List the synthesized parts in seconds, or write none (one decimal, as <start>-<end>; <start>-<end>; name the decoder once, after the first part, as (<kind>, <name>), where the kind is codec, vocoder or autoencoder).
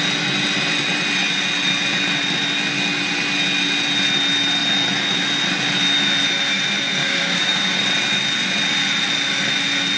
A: 7.0-7.8 (codec, DAC)